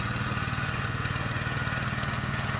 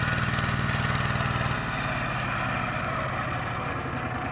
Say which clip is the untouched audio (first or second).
second